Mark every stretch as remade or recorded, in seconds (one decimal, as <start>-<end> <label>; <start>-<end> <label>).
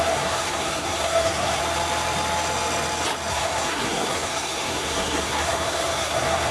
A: 0.0-1.6 remade; 1.6-3.3 recorded; 3.3-6.5 remade